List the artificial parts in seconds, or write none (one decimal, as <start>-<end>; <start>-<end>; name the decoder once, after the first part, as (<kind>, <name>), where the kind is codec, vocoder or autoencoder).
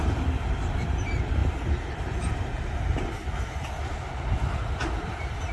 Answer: 0.0-1.4 (vocoder, BigVGAN v2); 4.7-5.5